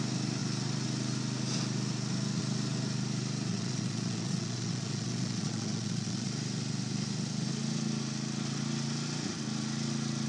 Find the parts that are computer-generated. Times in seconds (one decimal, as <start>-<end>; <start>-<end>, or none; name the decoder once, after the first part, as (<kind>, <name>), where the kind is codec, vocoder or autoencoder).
3.5-6.3 (vocoder, Vocos)